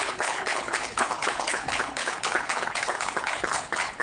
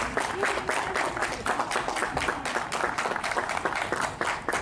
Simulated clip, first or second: first